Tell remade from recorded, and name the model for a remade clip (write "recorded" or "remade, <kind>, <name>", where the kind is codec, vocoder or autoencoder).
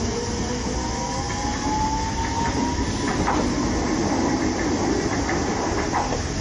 recorded